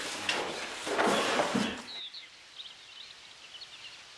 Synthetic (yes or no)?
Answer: no